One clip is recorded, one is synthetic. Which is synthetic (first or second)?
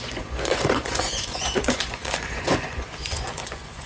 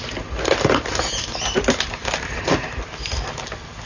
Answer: first